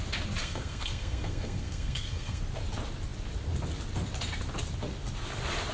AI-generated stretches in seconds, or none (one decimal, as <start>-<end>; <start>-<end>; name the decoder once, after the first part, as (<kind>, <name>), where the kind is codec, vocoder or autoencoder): 0.4-2.4 (codec, SNAC)